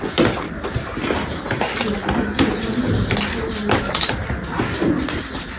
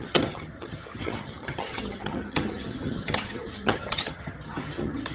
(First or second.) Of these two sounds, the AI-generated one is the second